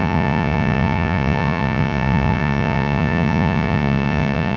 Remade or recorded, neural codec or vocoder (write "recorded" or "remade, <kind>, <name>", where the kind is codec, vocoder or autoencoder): remade, vocoder, Vocos